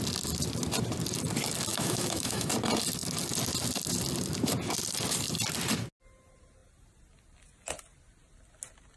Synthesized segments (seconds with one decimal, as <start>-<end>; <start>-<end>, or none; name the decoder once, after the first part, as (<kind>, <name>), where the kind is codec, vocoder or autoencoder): 1.7-2.5 (autoencoder, DAC-VAE)